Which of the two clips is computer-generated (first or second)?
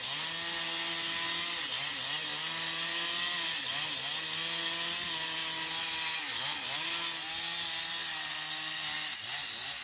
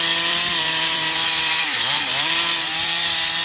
second